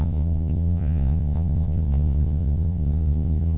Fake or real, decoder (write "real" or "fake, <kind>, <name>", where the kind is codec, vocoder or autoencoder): fake, vocoder, Vocos